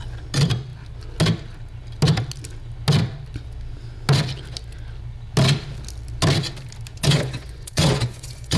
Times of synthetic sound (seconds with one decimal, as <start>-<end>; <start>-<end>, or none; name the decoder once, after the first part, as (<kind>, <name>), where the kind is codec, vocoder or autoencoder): 6.9-8.6 (vocoder, Vocos)